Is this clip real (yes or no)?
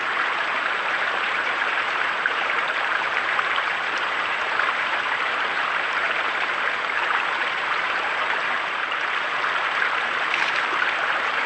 no